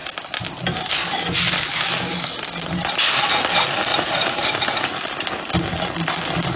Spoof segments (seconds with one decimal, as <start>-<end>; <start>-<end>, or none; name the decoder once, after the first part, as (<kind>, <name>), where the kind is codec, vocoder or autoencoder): 3.9-4.5 (vocoder, BigVGAN v2)